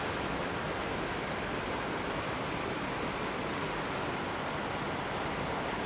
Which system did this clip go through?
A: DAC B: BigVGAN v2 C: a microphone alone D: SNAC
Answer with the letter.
C